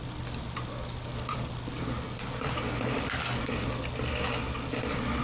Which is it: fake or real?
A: real